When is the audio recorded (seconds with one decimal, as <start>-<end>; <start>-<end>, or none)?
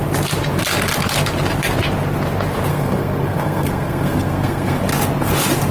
0.0-2.7; 4.8-5.7